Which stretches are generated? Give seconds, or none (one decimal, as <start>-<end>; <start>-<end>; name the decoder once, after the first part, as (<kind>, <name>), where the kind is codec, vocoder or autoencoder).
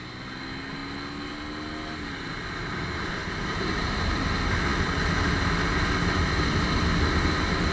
3.2-4.0 (vocoder, BigVGAN v2)